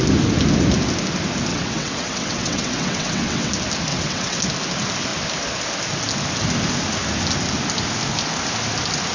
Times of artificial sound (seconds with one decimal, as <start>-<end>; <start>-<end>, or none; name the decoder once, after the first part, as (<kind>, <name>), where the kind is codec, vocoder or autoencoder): 1.5-3.5 (vocoder, WaveNeXt); 3.9-4.4

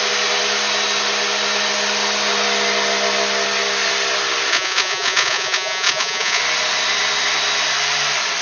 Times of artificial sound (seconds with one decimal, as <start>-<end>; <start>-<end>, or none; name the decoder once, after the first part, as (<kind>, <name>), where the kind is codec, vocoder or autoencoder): 4.5-6.4 (vocoder, Vocos)

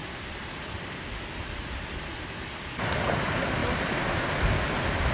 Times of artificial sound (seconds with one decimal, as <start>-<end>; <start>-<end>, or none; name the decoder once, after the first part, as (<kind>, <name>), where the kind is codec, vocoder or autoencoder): none

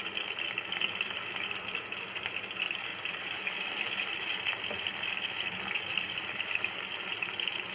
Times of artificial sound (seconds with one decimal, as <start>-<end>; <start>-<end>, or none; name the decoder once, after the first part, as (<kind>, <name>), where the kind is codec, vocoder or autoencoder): none

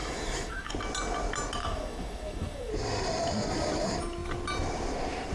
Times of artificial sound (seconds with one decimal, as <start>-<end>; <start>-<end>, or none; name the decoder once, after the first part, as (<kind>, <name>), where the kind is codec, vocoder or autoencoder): 0.0-0.7 (autoencoder, DAC-VAE); 1.6-2.7

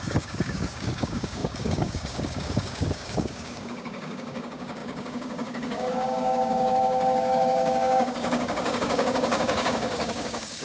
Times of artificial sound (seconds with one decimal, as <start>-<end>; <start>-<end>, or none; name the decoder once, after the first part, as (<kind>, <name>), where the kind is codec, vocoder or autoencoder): 0.0-10.6 (codec, DAC)

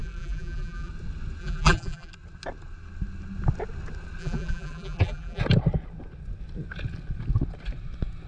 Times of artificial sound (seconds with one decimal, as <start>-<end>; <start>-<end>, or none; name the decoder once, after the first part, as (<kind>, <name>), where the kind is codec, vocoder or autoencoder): 0.0-0.9 (vocoder, BigVGAN v2); 1.4-2.1; 4.2-5.4